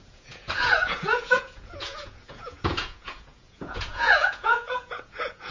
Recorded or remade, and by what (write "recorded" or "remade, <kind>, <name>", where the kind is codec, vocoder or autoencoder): remade, vocoder, Vocos